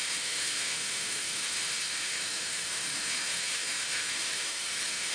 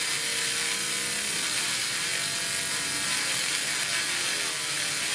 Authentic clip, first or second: second